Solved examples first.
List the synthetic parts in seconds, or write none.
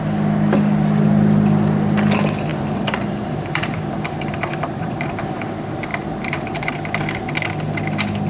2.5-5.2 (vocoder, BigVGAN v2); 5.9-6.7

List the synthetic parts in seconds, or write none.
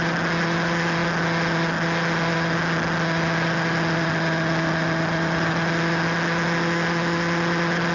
none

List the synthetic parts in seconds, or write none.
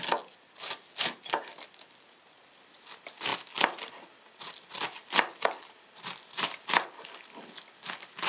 3.3-5.7 (vocoder, BigVGAN v2)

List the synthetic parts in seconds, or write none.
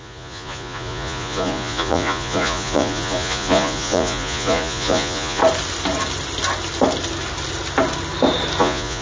0.0-5.4 (vocoder, Vocos); 8.6-9.0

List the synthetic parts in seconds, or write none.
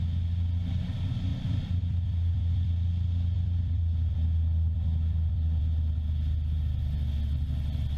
1.3-5.6 (vocoder, BigVGAN v2)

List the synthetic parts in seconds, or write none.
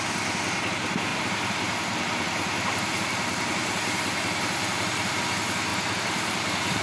1.1-5.2 (vocoder, BigVGAN v2); 5.7-6.8